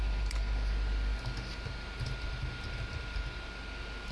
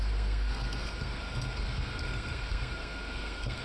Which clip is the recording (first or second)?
first